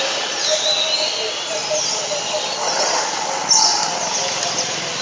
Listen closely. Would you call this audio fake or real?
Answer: real